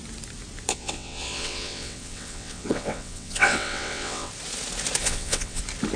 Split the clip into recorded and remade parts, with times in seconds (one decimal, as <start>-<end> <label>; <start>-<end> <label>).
0.0-0.7 recorded; 0.7-4.3 remade; 4.3-5.0 recorded; 5.0-5.6 remade; 5.6-6.0 recorded